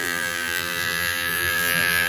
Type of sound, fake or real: fake